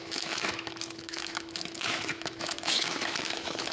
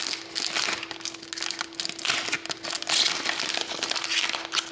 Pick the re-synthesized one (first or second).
first